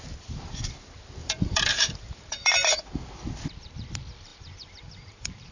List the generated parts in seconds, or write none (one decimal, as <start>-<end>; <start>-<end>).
1.2-2.8; 4.3-5.5